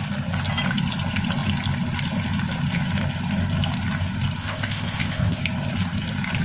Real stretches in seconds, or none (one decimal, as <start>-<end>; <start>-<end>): 0.0-4.4; 5.4-6.4